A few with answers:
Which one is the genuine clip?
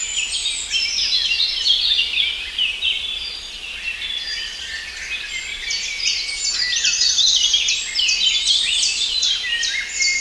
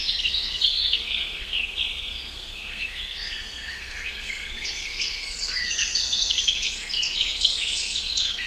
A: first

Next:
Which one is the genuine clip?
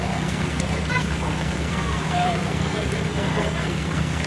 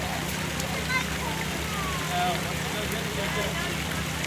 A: second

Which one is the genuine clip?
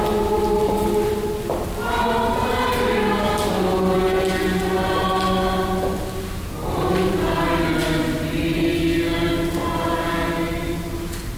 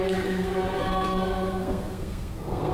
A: first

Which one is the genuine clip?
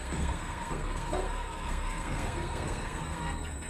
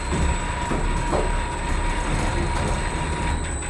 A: second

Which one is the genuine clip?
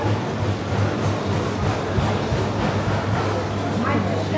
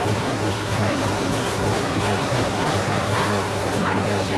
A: first